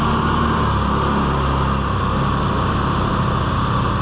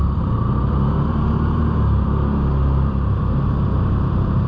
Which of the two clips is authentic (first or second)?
first